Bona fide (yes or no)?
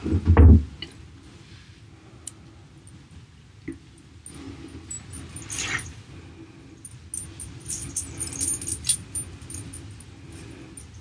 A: yes